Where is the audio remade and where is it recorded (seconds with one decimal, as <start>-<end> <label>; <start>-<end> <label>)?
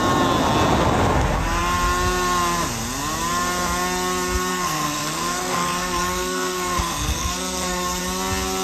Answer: 0.0-4.5 recorded; 4.5-8.0 remade; 8.0-8.6 recorded